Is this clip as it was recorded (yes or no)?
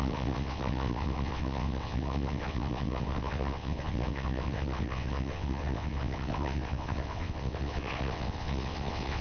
no